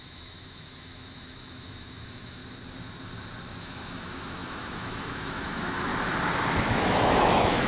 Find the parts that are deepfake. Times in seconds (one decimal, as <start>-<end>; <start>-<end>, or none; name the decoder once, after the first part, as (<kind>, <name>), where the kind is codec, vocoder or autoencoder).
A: 0.0-2.4 (autoencoder, DAC-VAE); 3.6-5.9; 6.7-7.7